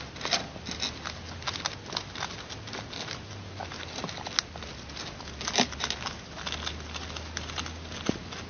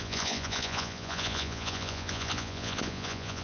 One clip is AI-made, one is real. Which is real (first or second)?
first